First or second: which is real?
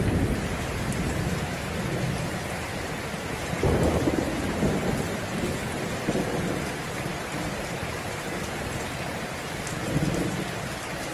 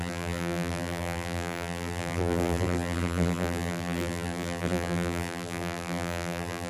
first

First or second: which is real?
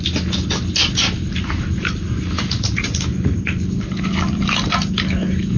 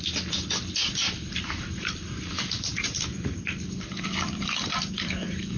first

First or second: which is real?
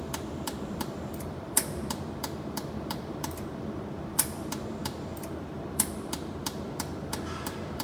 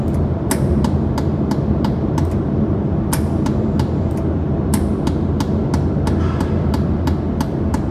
second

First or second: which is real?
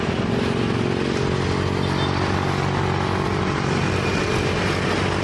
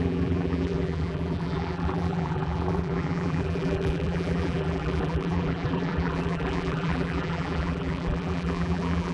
first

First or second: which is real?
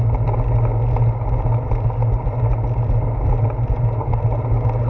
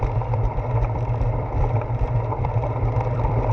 first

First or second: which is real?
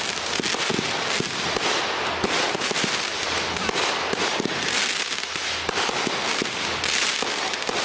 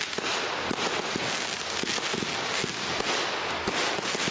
second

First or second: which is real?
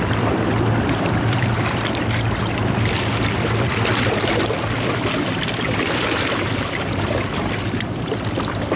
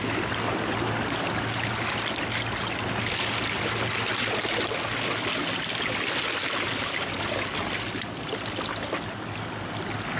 second